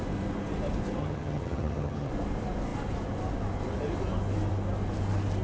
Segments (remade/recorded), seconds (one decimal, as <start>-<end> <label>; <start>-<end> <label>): 0.0-1.0 recorded; 1.0-2.1 remade; 2.1-5.4 recorded